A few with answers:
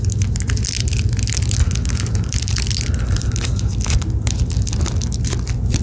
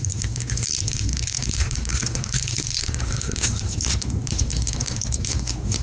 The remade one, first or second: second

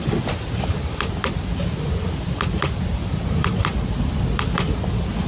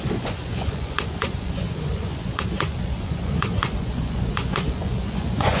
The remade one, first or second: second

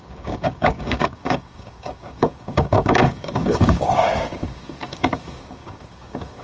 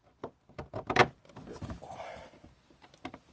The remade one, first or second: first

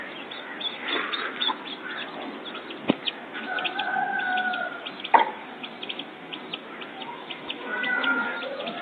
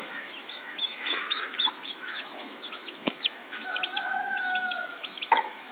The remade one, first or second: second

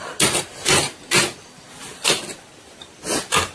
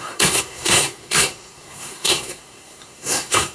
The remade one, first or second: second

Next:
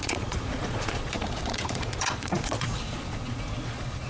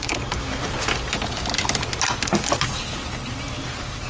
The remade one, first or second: first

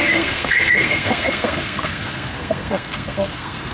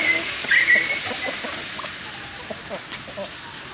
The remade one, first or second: first